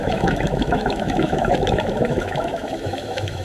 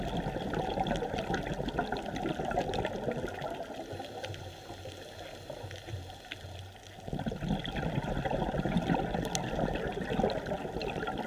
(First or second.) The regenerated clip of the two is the first